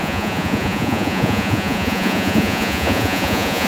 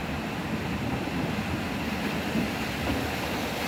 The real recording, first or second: second